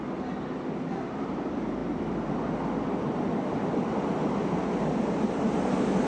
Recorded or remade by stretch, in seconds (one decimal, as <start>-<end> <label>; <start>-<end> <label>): 0.0-6.1 recorded